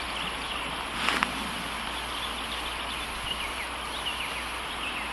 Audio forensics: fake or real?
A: real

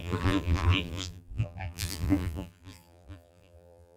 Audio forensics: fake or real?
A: fake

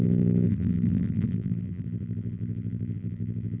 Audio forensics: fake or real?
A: fake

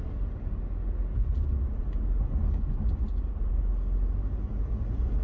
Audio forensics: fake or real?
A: real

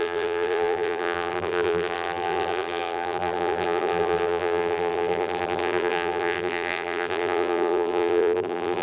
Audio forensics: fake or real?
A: fake